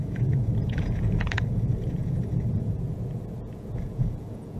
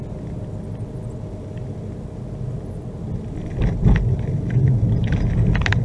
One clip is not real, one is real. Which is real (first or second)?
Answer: second